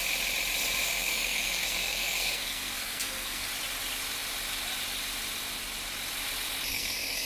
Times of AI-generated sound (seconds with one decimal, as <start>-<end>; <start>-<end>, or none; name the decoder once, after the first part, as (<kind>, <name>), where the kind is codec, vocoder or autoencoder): 0.8-3.5 (codec, SNAC); 6.7-7.3